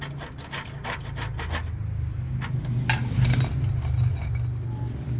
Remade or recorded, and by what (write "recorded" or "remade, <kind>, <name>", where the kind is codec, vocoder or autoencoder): recorded